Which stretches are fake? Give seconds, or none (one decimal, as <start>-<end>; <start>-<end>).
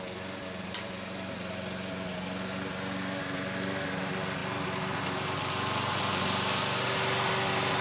none